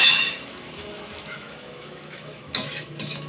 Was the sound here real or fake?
fake